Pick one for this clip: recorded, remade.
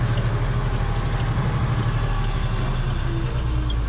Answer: recorded